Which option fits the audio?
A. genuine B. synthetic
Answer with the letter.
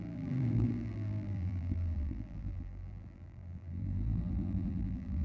B